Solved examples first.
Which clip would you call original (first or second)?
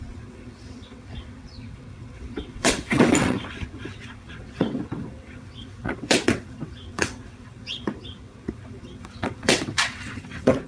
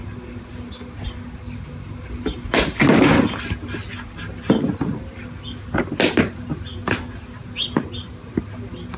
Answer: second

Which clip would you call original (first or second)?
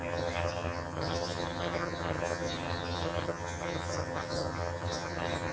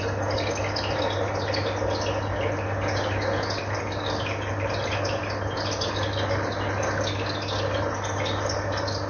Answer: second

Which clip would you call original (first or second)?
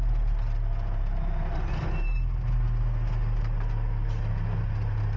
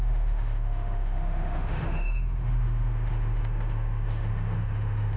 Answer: first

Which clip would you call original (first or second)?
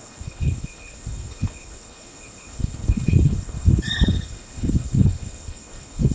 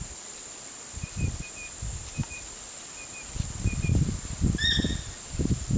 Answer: second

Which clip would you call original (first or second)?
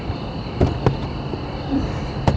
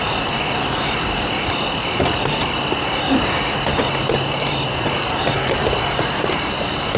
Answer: first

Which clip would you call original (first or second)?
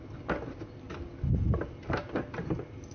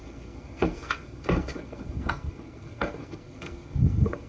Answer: first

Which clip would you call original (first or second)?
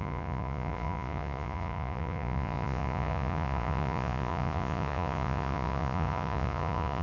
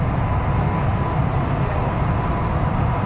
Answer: second